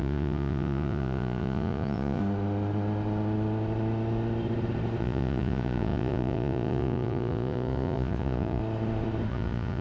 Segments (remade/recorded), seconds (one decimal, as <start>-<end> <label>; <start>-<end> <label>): 0.0-2.2 remade; 2.2-5.0 recorded; 5.0-8.6 remade; 8.6-9.3 recorded; 9.3-9.8 remade